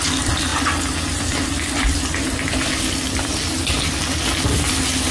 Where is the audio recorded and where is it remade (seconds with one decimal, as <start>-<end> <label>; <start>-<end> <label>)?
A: 0.0-5.1 recorded

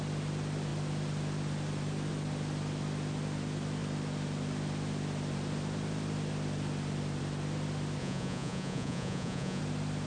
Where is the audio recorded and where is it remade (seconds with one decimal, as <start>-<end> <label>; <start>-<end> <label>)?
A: 0.0-8.0 recorded; 8.0-9.6 remade; 9.6-10.1 recorded

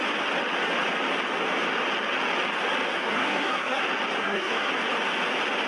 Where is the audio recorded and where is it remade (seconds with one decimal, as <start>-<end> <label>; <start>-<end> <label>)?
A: 0.0-2.9 recorded; 2.9-3.8 remade; 3.8-4.2 recorded; 4.2-4.7 remade; 4.7-5.7 recorded

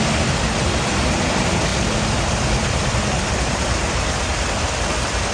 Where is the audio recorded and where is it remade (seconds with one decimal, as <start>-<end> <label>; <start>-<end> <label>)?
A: 0.0-1.7 recorded; 1.7-3.4 remade; 3.4-5.3 recorded